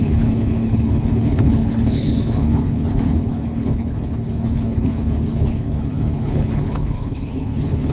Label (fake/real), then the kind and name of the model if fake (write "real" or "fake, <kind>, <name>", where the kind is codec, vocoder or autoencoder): fake, codec, HILCodec